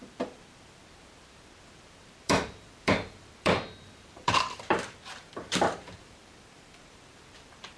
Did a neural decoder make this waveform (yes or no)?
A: yes